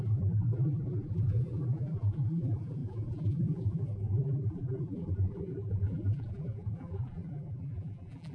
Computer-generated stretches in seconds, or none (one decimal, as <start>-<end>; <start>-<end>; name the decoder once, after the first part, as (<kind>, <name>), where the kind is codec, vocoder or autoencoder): 0.0-8.3 (vocoder, BigVGAN v2)